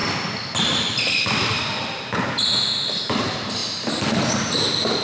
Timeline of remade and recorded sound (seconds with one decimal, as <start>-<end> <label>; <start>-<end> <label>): 0.0-5.0 recorded